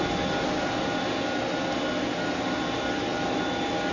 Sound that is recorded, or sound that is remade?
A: recorded